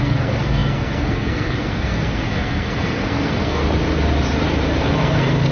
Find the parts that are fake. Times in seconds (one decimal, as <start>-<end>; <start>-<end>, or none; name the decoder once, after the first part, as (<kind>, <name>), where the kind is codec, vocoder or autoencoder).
0.0-3.6 (codec, SNAC); 4.8-5.5